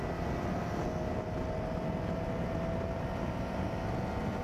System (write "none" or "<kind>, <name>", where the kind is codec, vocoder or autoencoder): none